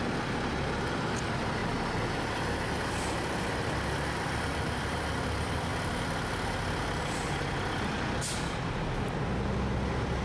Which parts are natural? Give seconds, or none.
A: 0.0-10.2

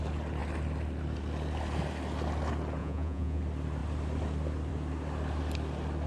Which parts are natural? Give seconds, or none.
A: 0.0-2.8; 3.4-6.1

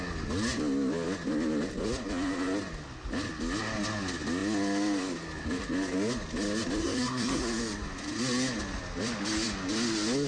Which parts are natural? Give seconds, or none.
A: 0.0-6.8; 7.4-10.3

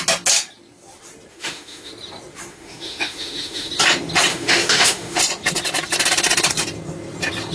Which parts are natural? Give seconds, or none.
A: 0.0-1.3; 1.9-2.5; 3.7-4.3; 5.2-7.5

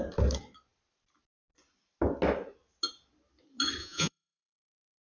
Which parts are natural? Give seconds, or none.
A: 0.0-3.8

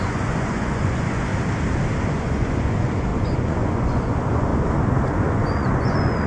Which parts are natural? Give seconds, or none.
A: 1.3-2.1; 4.5-5.1

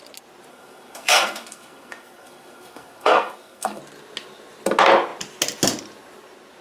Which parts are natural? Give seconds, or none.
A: 0.0-0.5; 3.8-6.6